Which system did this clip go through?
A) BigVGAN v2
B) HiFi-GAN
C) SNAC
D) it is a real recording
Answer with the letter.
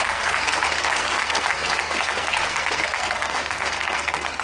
C